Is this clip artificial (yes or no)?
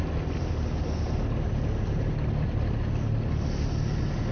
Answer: no